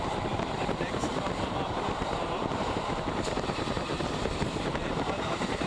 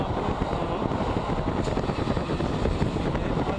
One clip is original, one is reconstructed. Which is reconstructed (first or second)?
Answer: first